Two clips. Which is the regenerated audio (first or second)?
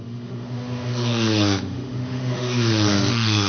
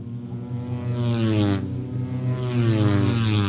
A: first